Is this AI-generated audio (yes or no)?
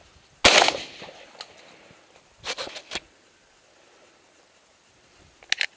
no